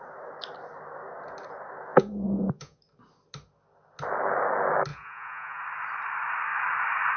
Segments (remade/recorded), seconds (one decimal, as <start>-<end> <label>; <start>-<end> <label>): 0.0-1.9 recorded; 1.9-2.8 remade; 2.8-4.9 recorded; 4.9-5.6 remade; 5.6-7.2 recorded